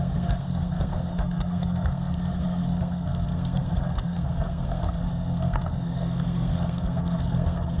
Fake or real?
fake